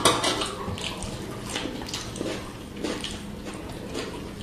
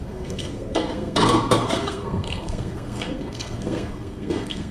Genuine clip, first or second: first